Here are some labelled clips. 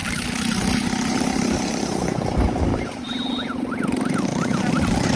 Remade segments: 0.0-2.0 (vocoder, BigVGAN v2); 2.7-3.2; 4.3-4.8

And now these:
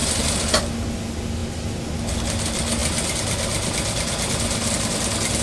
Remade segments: 0.0-0.6 (vocoder, BigVGAN v2)

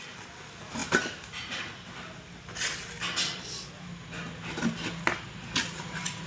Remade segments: none

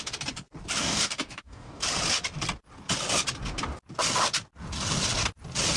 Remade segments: 0.8-1.8 (codec, DAC)

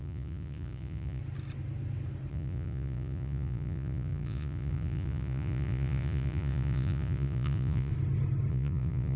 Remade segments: 0.0-1.2 (vocoder, Vocos); 2.3-7.9; 8.5-9.2